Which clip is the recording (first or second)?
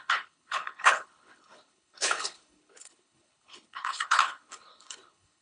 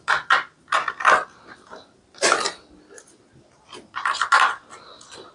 second